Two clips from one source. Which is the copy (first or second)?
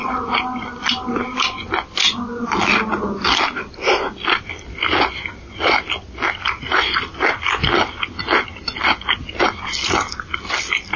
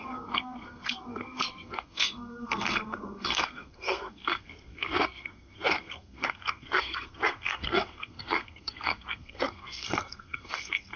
second